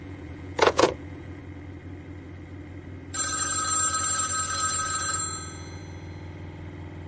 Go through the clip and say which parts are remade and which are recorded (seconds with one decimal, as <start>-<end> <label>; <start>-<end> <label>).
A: 0.0-1.4 remade; 1.4-5.1 recorded; 5.1-5.8 remade; 5.8-7.1 recorded